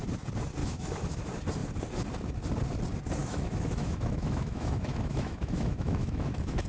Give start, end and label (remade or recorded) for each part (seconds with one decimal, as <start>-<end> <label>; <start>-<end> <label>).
0.0-0.6 recorded; 0.6-1.2 remade; 1.2-3.2 recorded; 3.2-6.7 remade